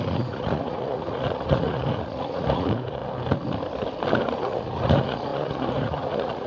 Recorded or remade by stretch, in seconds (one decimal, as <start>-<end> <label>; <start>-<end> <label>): 0.0-3.0 remade; 3.0-4.2 recorded; 4.2-6.5 remade